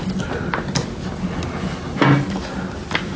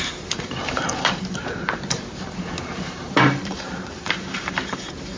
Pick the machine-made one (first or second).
second